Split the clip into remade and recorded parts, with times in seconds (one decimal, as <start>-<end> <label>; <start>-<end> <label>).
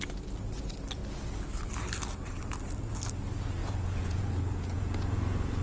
0.0-3.6 recorded; 3.6-5.6 remade